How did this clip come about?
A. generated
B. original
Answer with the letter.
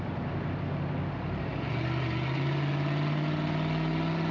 B